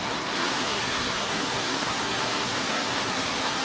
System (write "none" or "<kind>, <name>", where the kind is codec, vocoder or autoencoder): codec, SNAC